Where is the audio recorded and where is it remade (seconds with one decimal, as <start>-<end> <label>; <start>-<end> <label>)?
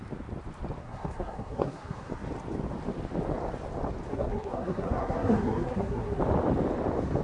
0.0-0.8 recorded; 0.8-2.1 remade; 2.1-4.1 recorded; 4.1-6.2 remade; 6.2-7.2 recorded